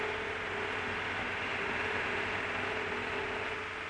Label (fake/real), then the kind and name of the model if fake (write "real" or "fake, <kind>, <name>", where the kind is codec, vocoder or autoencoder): real